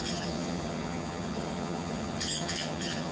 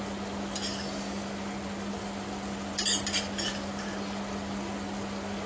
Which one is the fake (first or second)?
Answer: first